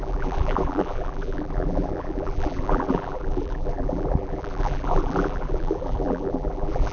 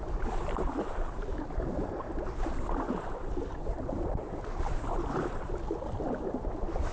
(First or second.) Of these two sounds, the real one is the second